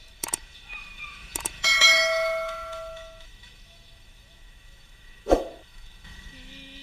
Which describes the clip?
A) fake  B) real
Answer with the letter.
A